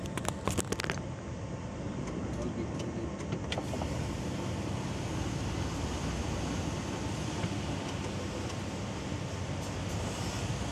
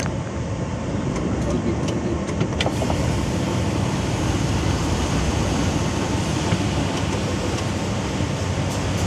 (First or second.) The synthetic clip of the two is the second